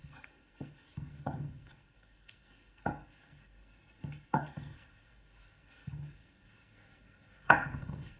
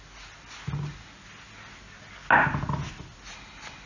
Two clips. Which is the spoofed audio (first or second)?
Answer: first